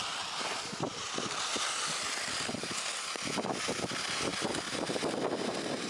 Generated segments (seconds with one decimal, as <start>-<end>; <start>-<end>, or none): 0.9-2.5; 4.3-5.4